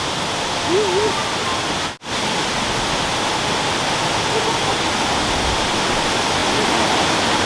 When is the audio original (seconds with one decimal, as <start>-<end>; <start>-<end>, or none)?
0.0-7.5